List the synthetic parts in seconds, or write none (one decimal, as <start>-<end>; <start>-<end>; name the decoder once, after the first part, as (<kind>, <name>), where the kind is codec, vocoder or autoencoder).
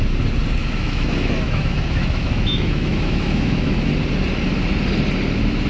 0.6-3.9 (autoencoder, DAC-VAE)